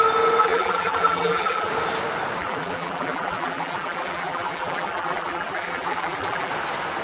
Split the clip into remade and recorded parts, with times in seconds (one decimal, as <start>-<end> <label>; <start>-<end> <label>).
0.0-0.4 recorded; 0.4-1.7 remade; 1.7-2.4 recorded; 2.4-6.5 remade; 6.5-7.0 recorded